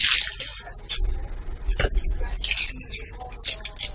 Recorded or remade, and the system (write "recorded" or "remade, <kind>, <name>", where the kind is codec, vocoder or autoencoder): recorded